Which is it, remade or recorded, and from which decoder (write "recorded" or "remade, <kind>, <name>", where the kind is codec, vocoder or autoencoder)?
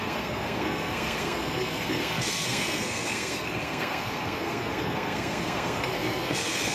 remade, codec, SNAC